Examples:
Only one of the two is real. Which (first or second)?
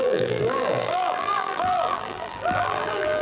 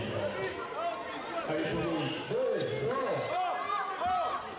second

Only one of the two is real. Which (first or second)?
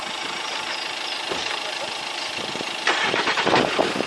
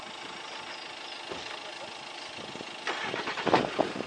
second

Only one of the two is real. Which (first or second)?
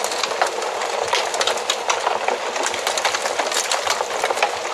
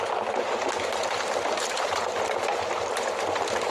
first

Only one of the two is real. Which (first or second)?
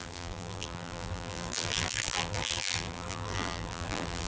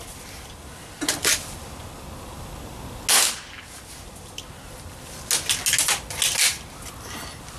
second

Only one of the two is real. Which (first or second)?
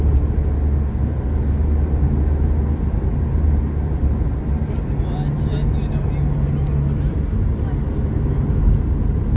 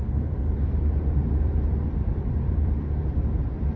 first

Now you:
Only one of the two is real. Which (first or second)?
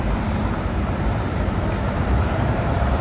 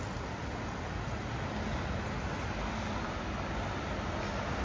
second